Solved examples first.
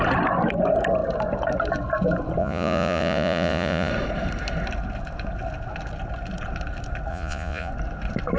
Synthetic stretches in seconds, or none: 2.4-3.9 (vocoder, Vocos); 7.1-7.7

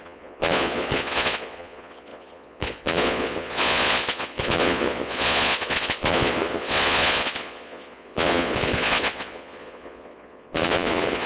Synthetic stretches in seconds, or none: 0.0-11.3 (vocoder, Vocos)

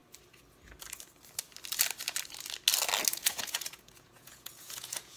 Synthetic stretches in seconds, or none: 3.1-5.2 (vocoder, Vocos)